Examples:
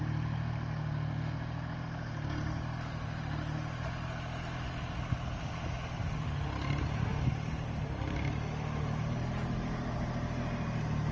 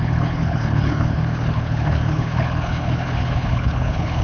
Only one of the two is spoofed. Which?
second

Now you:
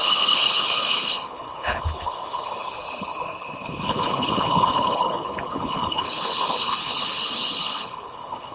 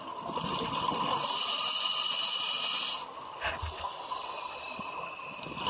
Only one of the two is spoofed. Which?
first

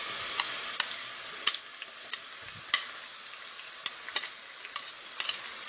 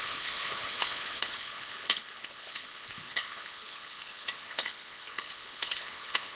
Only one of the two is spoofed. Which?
second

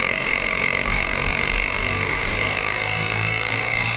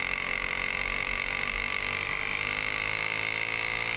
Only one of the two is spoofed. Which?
first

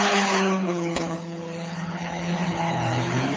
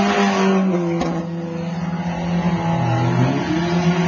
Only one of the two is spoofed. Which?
first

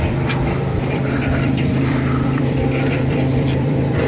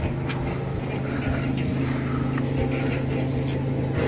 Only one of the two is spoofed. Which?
first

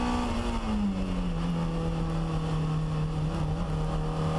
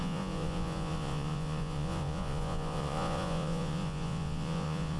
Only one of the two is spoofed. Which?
second